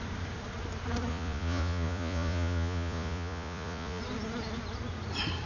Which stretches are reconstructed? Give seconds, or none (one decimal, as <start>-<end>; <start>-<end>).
1.1-4.0